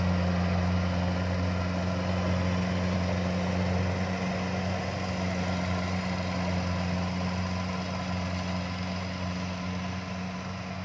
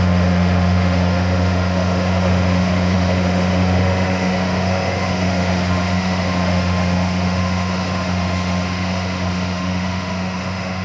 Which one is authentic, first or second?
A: first